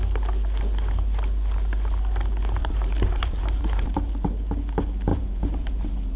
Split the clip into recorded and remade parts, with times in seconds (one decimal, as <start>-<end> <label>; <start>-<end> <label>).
0.0-2.6 recorded; 2.6-4.3 remade; 4.3-5.1 recorded; 5.1-6.2 remade